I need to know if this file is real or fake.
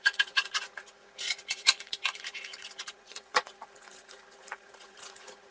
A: fake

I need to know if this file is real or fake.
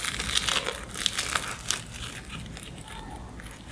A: real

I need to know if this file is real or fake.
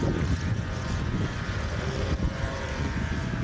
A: fake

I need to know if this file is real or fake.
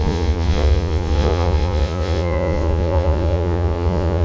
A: fake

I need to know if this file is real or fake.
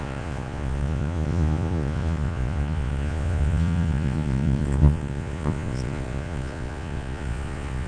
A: fake